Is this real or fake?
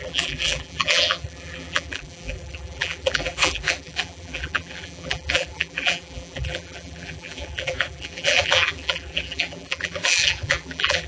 fake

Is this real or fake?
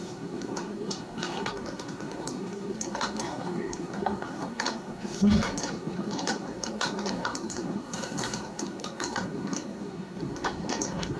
fake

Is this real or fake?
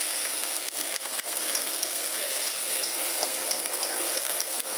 fake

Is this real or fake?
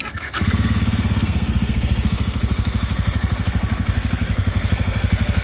fake